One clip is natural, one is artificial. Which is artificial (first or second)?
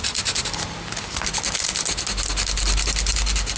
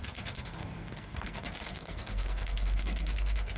second